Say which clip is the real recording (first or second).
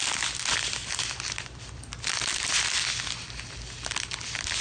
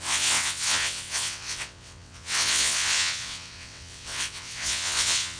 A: first